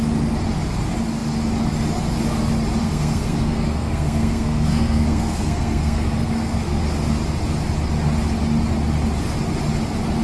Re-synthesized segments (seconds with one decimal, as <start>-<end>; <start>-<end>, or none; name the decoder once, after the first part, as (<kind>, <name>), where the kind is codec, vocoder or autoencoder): 2.8-6.8 (codec, SNAC)